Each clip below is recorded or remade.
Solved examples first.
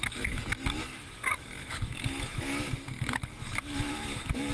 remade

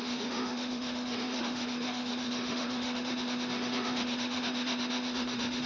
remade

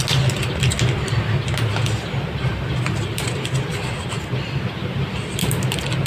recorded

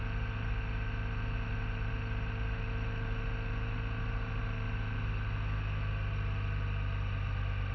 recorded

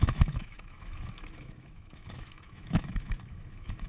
remade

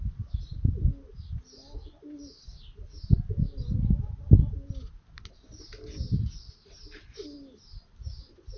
recorded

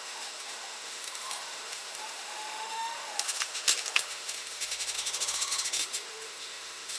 remade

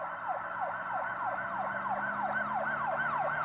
recorded